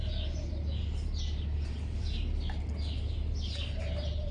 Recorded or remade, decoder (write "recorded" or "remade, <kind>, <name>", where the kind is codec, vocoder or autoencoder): recorded